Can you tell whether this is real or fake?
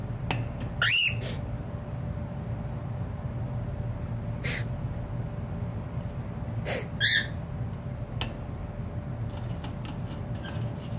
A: real